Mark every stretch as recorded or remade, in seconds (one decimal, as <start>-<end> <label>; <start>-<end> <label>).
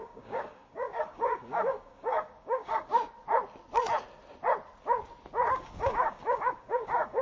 0.0-2.9 remade; 2.9-5.5 recorded; 5.5-7.2 remade